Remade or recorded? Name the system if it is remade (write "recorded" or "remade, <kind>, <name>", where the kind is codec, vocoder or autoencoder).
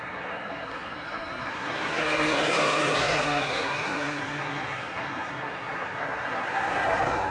remade, codec, SNAC